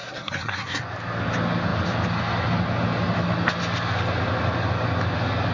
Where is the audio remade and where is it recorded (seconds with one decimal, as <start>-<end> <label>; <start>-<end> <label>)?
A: 0.0-0.8 remade; 0.8-5.5 recorded